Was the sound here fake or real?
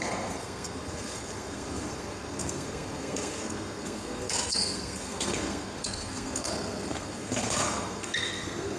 fake